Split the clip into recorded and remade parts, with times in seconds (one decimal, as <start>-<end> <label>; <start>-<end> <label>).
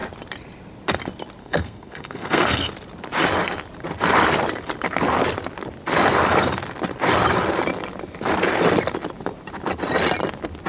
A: 0.0-1.4 recorded; 1.4-2.7 remade; 2.7-10.7 recorded